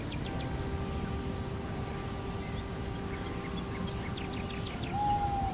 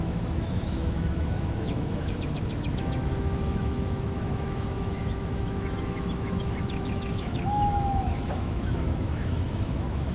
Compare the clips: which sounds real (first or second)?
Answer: first